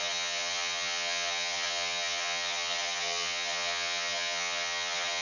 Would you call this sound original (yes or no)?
no